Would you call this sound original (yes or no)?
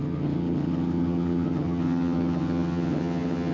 no